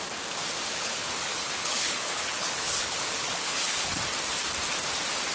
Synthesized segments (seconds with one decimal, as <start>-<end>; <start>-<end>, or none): 0.7-3.9